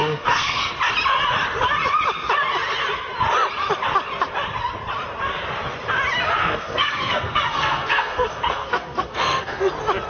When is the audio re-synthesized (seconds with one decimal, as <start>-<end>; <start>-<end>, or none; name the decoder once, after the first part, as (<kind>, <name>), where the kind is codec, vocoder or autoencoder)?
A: 0.0-0.7 (codec, SNAC); 6.4-9.7